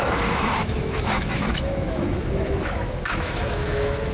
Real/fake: fake